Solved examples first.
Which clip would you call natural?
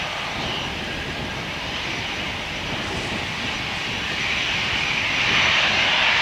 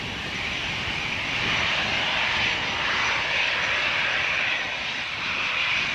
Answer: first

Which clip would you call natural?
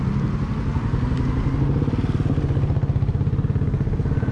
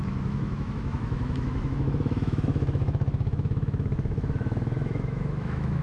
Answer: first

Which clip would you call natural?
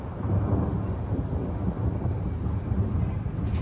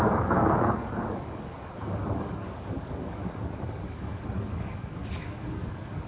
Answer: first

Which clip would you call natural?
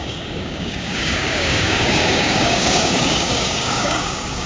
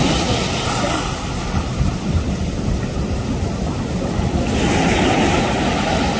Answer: second